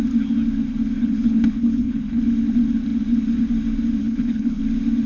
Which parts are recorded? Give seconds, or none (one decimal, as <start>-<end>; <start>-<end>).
0.0-1.0; 2.2-4.0; 4.6-5.1